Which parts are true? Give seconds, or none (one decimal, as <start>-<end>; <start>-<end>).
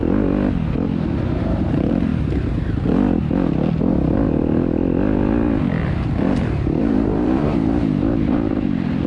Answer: 0.0-1.4; 2.1-6.8